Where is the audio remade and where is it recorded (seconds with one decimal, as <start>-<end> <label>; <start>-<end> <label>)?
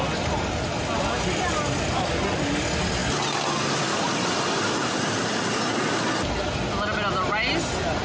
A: 0.0-8.0 recorded